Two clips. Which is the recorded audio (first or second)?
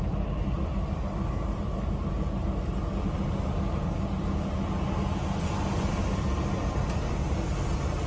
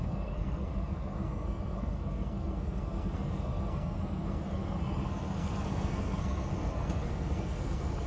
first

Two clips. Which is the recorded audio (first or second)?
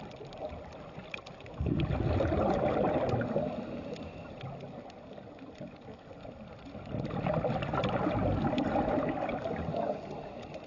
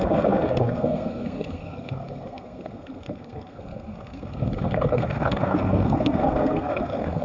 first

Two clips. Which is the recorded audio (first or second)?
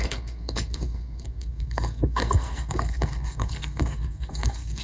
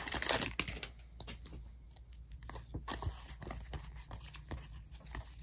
second